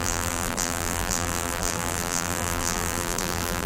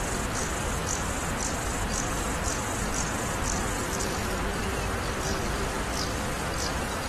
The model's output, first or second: first